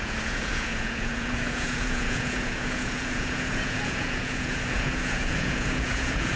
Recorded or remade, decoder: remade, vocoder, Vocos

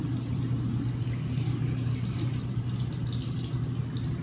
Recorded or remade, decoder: recorded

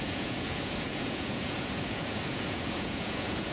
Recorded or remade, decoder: remade, vocoder, Vocos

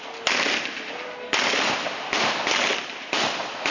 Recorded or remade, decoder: recorded